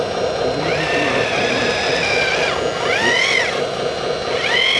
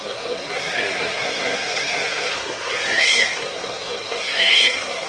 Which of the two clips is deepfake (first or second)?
second